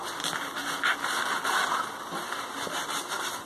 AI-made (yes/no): no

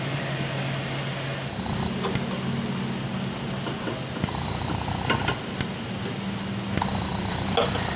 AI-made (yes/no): no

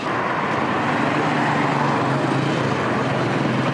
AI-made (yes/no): no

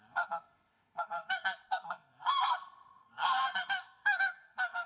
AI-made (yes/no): yes